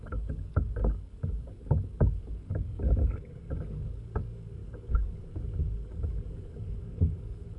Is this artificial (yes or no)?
yes